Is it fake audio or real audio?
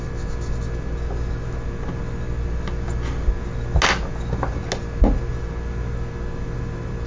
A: real